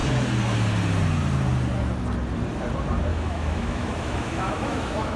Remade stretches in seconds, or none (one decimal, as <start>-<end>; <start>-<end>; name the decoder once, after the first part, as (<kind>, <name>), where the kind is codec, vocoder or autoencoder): 3.1-5.2 (autoencoder, DAC-VAE)